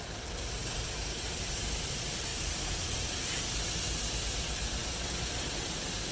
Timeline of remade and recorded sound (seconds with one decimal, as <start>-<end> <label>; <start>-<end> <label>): 0.0-0.6 recorded; 0.6-1.7 remade; 1.7-2.3 recorded; 2.3-3.3 remade; 3.3-6.1 recorded